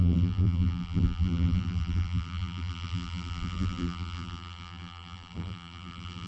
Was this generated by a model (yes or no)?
yes